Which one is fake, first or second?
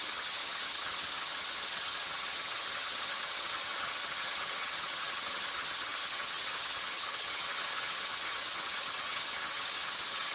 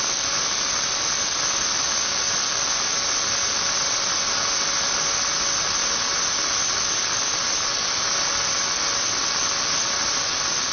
first